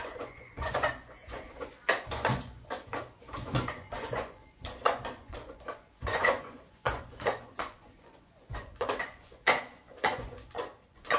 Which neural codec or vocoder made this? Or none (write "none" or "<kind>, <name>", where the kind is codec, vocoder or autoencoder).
vocoder, Vocos